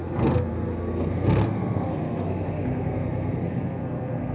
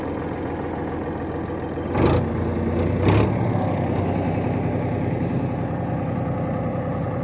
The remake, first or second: first